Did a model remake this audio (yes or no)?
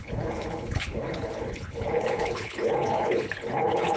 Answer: yes